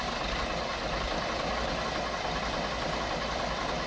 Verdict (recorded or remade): recorded